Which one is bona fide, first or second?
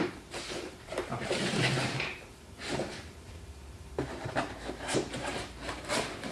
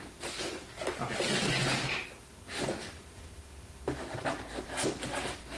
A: second